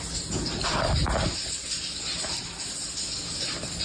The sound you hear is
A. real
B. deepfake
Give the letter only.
A